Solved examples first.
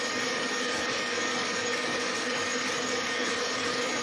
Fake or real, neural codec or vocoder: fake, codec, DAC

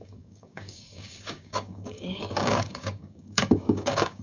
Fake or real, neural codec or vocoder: fake, codec, DAC